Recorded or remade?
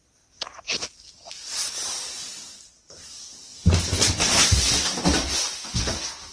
recorded